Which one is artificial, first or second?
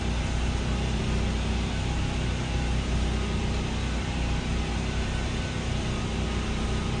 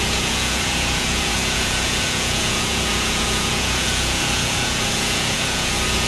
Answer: second